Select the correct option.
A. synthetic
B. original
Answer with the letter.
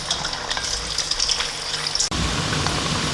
B